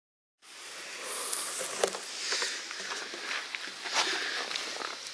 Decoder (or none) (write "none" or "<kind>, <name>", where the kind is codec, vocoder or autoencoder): none